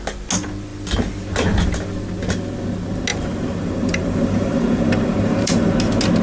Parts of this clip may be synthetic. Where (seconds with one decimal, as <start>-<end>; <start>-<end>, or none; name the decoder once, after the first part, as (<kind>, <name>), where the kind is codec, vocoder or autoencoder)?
3.1-5.7 (vocoder, BigVGAN v2)